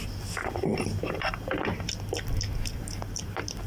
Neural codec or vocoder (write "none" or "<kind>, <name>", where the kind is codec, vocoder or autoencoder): vocoder, BigVGAN v2